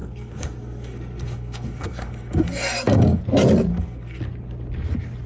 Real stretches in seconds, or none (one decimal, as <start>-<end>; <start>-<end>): 3.2-3.7; 4.2-5.3